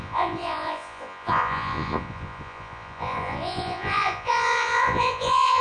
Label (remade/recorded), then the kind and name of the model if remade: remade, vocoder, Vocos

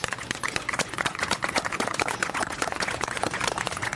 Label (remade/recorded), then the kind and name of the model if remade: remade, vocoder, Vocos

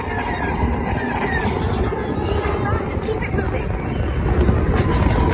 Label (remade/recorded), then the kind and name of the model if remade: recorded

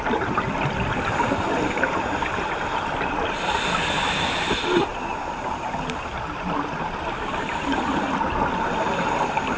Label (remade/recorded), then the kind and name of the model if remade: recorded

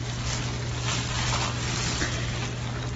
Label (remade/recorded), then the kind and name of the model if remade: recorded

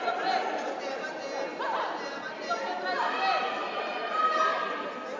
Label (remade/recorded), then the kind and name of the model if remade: recorded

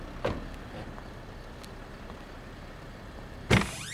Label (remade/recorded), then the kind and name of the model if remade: recorded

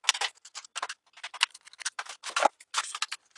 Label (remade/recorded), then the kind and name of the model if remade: recorded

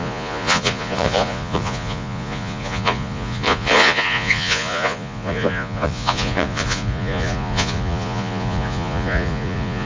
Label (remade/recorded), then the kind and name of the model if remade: remade, vocoder, Vocos